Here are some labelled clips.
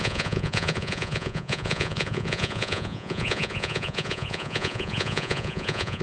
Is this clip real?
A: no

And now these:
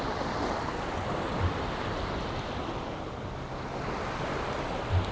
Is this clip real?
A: yes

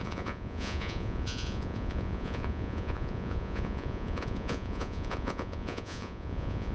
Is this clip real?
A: no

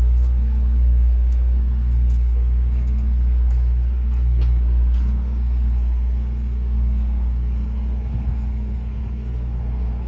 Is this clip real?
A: no